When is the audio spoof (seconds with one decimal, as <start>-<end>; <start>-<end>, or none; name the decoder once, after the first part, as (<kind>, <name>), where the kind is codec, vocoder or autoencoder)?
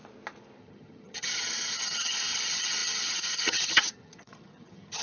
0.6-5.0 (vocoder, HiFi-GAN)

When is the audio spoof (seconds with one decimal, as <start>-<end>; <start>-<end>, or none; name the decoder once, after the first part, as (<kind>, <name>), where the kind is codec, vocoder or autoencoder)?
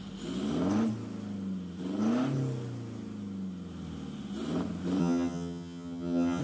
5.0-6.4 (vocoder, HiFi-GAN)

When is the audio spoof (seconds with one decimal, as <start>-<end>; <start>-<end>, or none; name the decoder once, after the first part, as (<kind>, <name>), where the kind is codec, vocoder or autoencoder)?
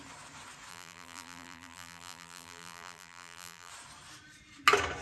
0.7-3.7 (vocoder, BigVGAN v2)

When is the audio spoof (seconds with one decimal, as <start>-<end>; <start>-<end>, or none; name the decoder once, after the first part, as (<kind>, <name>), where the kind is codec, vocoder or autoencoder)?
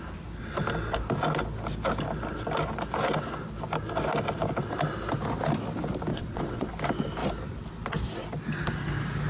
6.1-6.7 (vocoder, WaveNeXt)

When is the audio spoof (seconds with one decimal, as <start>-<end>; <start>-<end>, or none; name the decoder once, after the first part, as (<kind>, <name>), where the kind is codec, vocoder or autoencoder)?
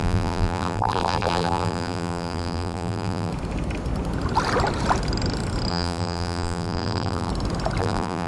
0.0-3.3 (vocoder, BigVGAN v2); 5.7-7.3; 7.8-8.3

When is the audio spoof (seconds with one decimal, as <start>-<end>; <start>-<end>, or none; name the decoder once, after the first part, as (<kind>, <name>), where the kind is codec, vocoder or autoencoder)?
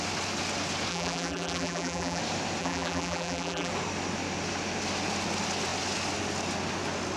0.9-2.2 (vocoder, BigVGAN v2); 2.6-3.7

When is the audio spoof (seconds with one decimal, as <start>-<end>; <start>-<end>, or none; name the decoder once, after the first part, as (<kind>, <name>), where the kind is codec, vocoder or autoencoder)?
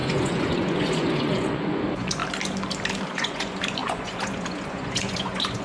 0.0-2.2 (vocoder, Vocos); 3.1-5.6